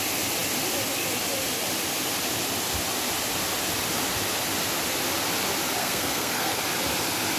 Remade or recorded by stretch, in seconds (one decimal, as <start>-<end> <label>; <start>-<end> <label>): 0.0-5.8 recorded; 5.8-6.6 remade; 6.6-7.4 recorded